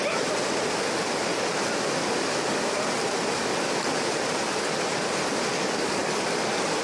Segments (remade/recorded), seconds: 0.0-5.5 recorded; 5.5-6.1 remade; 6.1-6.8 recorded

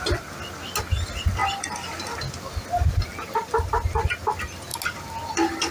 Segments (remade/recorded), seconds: 0.0-5.7 recorded

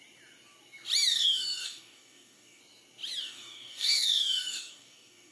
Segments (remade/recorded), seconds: 0.0-1.1 recorded; 1.1-2.6 remade; 2.6-3.2 recorded; 3.2-5.3 remade